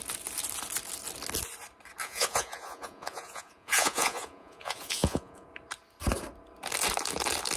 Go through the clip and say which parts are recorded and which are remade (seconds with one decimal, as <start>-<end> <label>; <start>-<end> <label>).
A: 0.0-2.0 recorded; 2.0-5.5 remade; 5.5-7.6 recorded